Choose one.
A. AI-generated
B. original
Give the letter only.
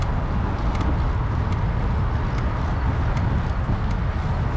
B